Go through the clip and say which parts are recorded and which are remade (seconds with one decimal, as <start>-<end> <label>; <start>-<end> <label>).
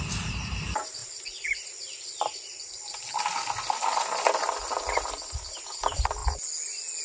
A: 0.0-1.0 recorded; 1.0-3.0 remade; 3.0-7.0 recorded